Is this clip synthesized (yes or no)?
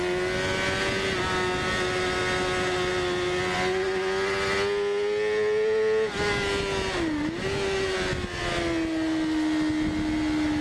no